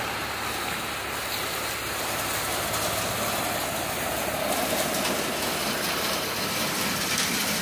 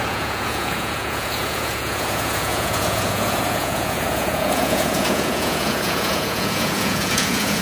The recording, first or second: first